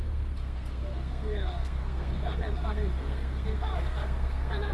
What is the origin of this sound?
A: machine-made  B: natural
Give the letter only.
A